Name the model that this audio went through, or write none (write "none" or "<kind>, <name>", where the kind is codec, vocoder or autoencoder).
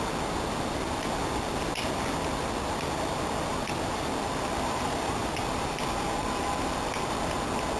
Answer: none